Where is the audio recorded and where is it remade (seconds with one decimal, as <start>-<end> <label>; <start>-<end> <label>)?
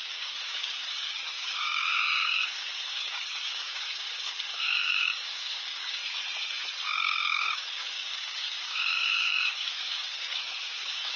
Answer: 0.0-6.0 remade; 6.0-6.9 recorded; 6.9-11.2 remade